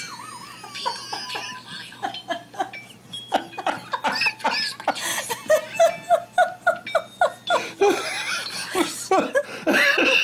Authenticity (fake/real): real